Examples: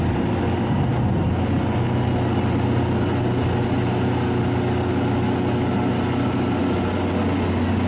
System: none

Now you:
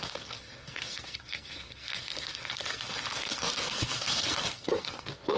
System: codec, SNAC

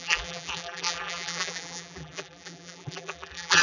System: vocoder, BigVGAN v2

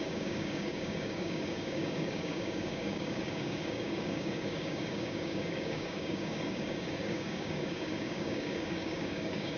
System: codec, DAC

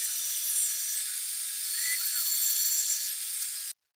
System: none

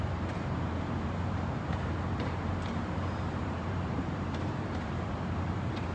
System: vocoder, BigVGAN v2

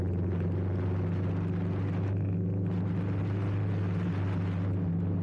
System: none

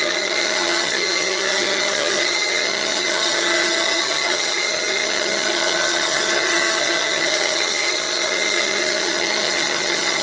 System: vocoder, HiFi-GAN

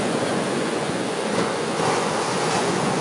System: vocoder, Vocos